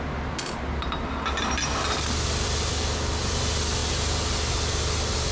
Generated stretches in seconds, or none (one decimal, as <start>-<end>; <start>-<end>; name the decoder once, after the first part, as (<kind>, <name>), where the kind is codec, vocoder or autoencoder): none